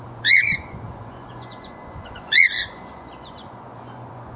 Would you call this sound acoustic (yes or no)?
no